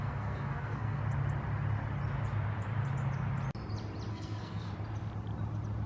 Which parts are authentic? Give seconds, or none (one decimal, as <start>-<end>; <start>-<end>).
1.0-4.1; 4.7-5.9